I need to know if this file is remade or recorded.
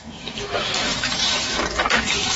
remade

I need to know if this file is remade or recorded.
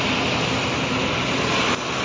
recorded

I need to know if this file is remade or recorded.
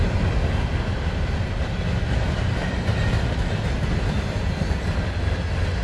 recorded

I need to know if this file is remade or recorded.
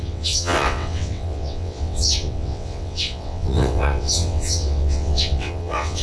remade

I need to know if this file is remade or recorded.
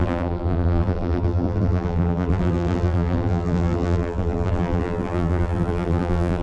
remade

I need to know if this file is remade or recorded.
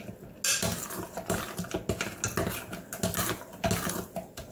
recorded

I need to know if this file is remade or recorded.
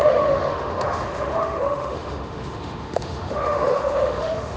remade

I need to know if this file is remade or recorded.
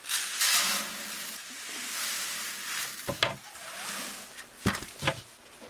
recorded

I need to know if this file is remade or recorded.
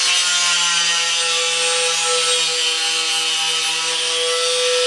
recorded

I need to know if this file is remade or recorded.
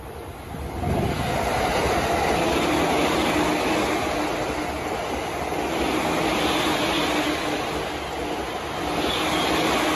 recorded